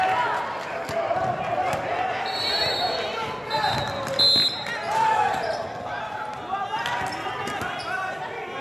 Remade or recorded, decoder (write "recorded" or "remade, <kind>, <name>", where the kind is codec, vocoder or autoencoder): recorded